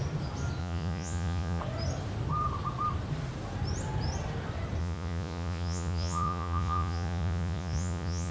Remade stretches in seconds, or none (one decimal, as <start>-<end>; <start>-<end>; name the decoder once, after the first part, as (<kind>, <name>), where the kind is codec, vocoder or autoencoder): 0.6-1.6 (vocoder, Vocos); 4.8-8.3